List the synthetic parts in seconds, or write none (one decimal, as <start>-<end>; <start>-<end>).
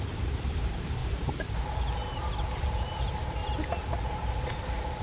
0.0-1.0; 2.6-3.4; 4.5-5.0